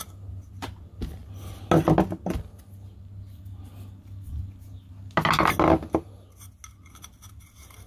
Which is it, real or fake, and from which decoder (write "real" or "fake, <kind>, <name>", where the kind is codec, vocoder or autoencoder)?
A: real